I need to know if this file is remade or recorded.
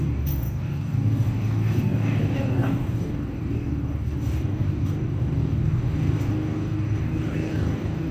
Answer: remade